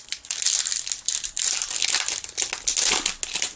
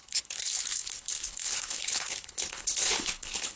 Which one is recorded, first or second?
first